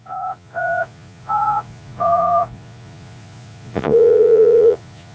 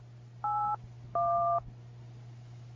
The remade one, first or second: first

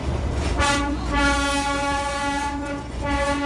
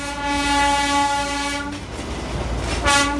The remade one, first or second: first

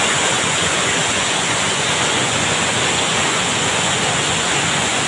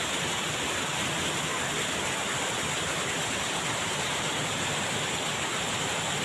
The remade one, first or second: first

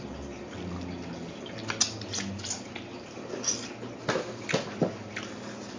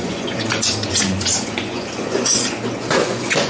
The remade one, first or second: second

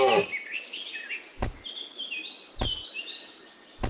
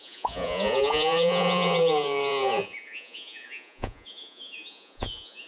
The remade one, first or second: second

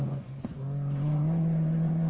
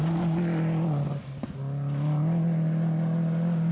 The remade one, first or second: first